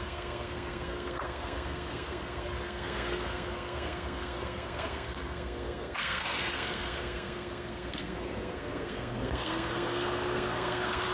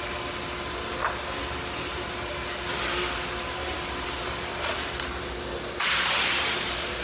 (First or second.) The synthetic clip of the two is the first